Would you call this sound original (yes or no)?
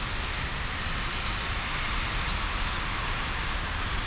yes